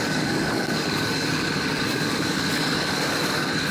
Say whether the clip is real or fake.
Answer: fake